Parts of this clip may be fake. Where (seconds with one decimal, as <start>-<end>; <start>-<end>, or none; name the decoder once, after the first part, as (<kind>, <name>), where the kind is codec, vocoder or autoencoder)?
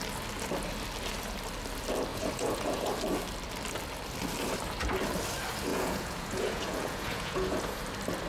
2.1-2.9 (vocoder, Vocos); 5.7-7.8